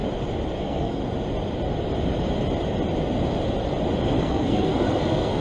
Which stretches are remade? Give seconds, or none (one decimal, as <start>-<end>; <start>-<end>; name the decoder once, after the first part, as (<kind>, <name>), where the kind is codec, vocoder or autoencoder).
0.6-1.0 (codec, SNAC); 4.2-5.4